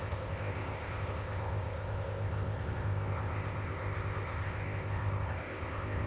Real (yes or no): no